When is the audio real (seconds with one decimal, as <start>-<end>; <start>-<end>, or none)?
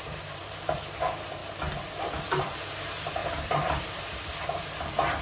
1.4-2.4